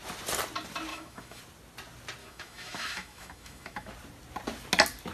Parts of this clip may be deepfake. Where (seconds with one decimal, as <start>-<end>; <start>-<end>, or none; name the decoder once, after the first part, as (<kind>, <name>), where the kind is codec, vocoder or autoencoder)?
0.9-1.4 (autoencoder, DAC-VAE); 2.2-3.9